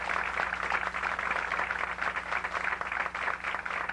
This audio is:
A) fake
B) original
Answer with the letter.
B